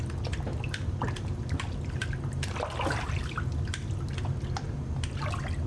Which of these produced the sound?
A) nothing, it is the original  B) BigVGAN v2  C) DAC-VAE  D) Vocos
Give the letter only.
A